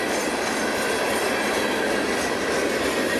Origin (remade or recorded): recorded